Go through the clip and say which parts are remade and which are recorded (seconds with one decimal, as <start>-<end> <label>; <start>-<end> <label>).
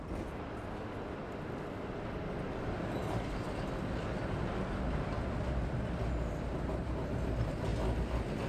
0.0-8.5 recorded